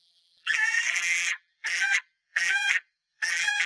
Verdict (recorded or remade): remade